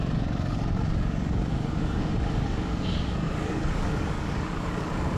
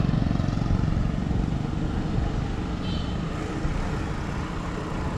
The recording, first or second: second